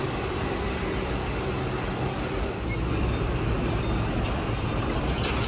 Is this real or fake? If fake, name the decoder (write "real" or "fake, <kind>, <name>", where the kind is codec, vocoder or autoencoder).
fake, vocoder, BigVGAN v2